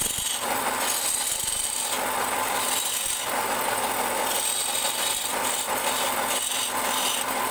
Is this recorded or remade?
recorded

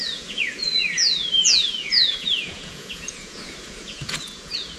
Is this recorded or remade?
remade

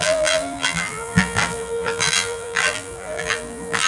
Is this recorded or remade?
remade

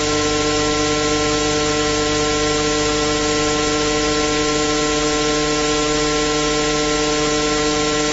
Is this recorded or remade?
recorded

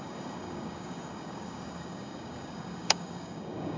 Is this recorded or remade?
remade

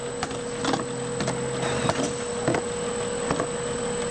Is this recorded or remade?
recorded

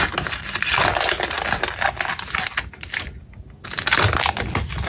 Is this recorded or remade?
recorded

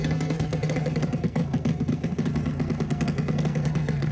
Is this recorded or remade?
remade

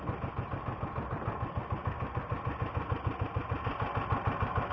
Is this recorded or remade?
recorded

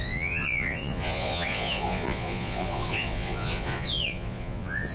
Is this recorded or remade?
remade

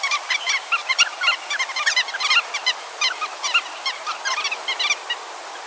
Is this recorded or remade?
recorded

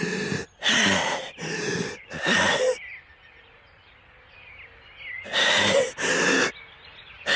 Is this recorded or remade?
recorded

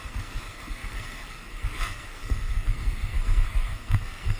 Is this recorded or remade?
remade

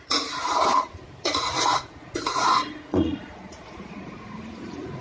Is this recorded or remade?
remade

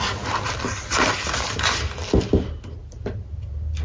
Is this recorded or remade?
recorded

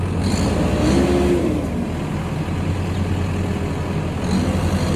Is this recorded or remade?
recorded